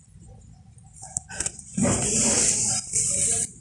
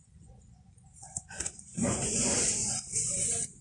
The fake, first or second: second